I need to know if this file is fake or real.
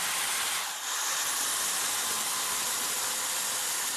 real